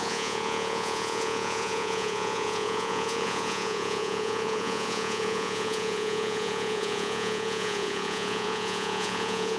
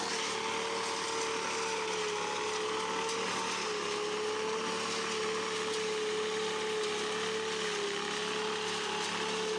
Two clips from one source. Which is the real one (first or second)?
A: second